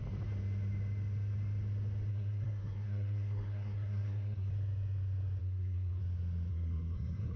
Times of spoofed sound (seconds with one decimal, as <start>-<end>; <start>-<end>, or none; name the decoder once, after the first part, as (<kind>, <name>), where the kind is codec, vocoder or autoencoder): 2.1-4.5 (codec, SNAC); 5.4-6.0; 6.5-7.4